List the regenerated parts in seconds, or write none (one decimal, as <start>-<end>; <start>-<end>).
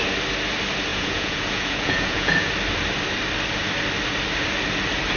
0.9-2.5